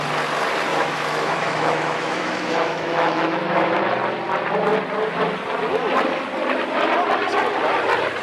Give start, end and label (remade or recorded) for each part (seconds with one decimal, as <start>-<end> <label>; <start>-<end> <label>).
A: 0.0-0.7 recorded; 0.7-3.8 remade; 3.8-8.2 recorded